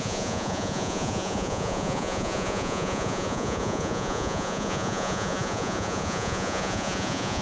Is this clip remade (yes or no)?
yes